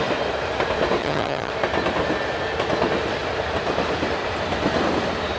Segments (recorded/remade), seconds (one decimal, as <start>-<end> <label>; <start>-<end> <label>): 0.0-1.0 recorded; 1.0-1.5 remade; 1.5-5.4 recorded